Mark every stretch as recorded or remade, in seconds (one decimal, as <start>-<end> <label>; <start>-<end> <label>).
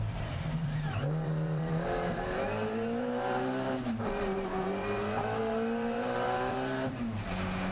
0.0-7.7 remade